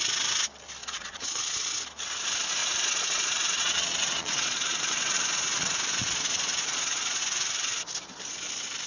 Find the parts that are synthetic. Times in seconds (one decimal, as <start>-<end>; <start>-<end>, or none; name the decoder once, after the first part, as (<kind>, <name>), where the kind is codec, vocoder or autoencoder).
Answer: 0.8-1.4 (vocoder, Vocos); 2.6-7.2